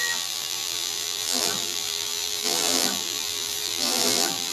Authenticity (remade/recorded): remade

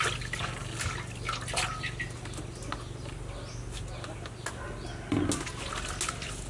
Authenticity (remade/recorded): recorded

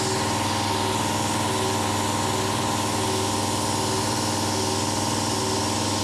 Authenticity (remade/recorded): recorded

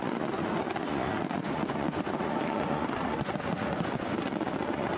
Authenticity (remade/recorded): remade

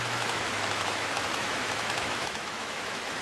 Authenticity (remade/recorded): remade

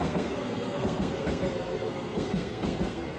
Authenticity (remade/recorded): remade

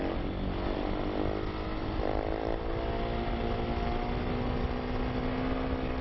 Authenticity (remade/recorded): recorded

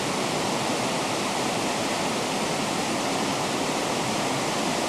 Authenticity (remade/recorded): recorded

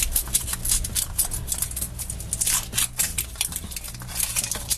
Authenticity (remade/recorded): recorded